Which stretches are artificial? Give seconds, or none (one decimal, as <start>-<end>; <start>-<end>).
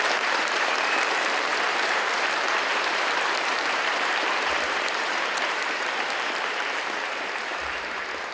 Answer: 0.0-8.3